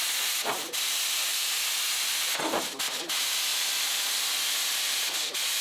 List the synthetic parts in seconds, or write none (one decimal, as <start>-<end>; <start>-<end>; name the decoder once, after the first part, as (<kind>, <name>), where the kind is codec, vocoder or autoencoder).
0.0-1.3 (vocoder, BigVGAN v2); 2.4-3.5; 4.2-5.6